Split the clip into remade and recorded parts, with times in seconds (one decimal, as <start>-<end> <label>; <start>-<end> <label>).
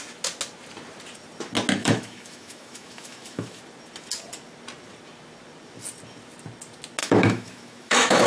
0.0-1.8 recorded; 1.8-3.6 remade; 3.6-7.0 recorded; 7.0-8.3 remade